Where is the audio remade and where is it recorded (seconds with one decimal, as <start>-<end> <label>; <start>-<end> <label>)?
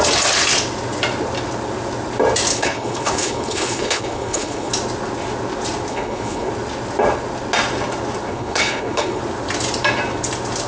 0.0-2.5 recorded; 2.5-4.7 remade; 4.7-5.9 recorded; 5.9-6.5 remade; 6.5-8.3 recorded; 8.3-9.2 remade; 9.2-10.7 recorded